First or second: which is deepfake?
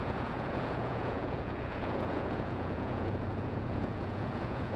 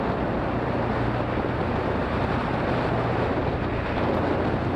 first